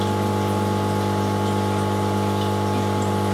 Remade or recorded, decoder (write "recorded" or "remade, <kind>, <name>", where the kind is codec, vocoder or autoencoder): recorded